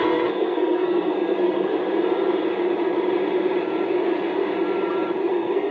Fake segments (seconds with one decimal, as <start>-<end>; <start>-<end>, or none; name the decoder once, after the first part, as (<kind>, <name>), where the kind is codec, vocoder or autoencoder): 0.0-1.8 (codec, SNAC); 5.2-5.7